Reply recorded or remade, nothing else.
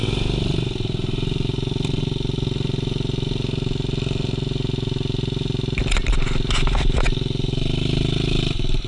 recorded